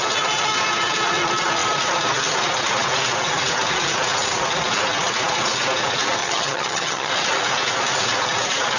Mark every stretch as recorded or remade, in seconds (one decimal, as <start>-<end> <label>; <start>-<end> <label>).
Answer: 0.0-6.2 recorded; 6.2-7.1 remade; 7.1-8.8 recorded